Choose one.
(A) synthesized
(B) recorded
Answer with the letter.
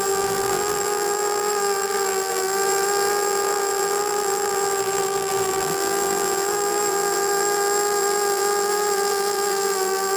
A